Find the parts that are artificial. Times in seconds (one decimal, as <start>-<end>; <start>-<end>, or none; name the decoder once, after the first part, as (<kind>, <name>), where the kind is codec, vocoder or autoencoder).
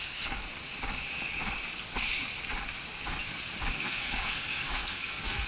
0.0-0.4 (codec, SNAC); 3.7-5.5